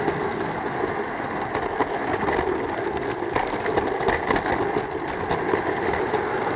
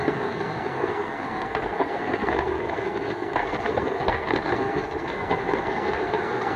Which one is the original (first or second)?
first